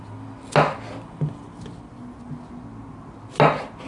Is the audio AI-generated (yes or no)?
no